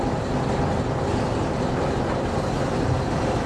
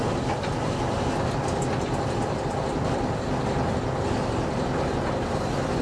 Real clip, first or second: second